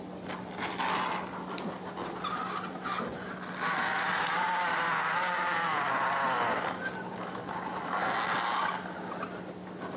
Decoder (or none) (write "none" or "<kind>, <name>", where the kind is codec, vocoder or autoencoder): none